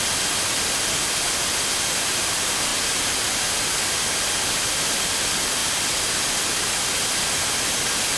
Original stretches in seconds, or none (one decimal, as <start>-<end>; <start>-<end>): 0.0-8.2